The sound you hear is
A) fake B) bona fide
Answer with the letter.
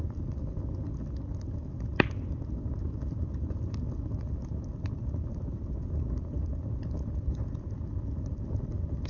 B